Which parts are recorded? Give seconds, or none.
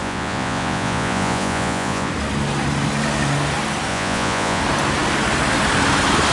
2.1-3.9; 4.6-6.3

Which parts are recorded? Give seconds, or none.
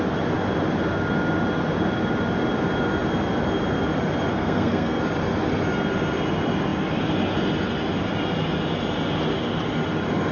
0.0-4.3; 5.0-10.3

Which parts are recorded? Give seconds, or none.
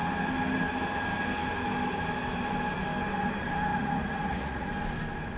0.0-3.7; 4.7-5.4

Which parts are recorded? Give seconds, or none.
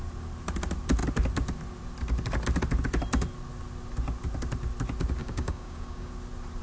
0.0-5.2; 6.1-6.6